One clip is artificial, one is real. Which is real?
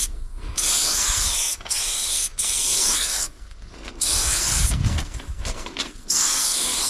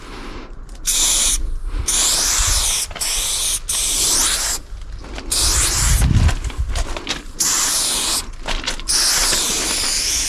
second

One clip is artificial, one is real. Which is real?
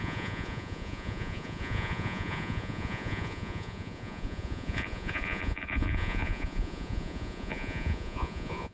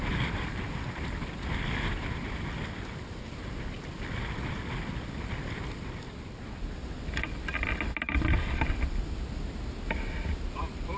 second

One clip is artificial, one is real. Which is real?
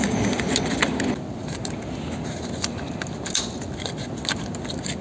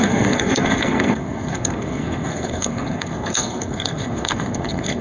first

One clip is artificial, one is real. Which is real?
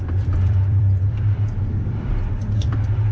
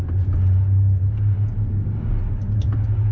second